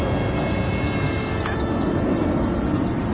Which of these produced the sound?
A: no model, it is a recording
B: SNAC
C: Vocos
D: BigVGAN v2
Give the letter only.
A